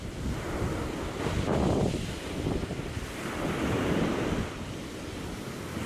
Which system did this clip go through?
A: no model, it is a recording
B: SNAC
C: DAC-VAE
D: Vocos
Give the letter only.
A